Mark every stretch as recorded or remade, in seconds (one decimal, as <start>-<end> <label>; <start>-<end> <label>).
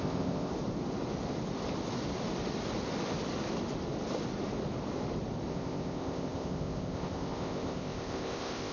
0.0-0.5 remade; 0.5-5.5 recorded; 5.5-8.7 remade